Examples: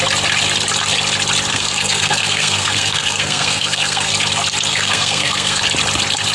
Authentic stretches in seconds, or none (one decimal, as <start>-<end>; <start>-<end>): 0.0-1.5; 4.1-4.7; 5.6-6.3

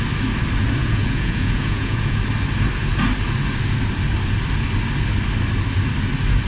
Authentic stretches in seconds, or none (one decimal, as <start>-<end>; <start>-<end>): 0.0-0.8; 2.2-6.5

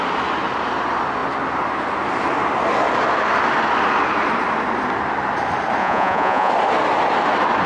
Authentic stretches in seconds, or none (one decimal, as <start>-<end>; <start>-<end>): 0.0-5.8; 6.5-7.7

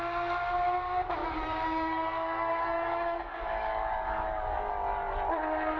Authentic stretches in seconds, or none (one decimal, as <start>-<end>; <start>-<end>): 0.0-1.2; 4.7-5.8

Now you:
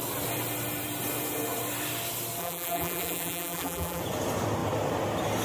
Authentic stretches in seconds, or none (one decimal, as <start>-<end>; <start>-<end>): 0.0-2.4; 4.0-5.4

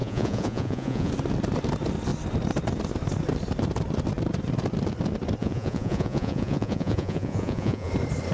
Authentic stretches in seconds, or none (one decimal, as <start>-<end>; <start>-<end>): 1.1-5.4; 7.9-8.3

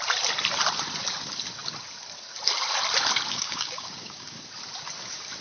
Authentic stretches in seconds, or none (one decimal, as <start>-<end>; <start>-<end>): 0.0-3.3; 4.4-5.4

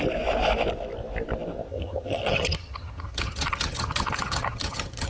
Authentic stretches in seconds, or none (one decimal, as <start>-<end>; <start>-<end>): 0.0-1.7